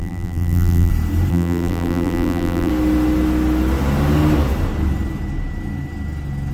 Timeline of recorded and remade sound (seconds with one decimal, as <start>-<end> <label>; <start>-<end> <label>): 0.0-0.9 remade; 0.9-1.3 recorded; 1.3-2.7 remade; 2.7-6.5 recorded